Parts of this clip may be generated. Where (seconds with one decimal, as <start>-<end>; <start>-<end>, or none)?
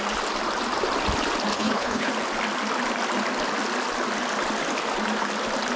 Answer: 1.5-2.1